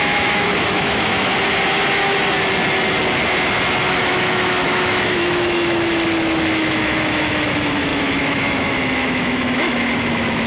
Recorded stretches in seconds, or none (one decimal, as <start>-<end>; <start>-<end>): 1.3-3.9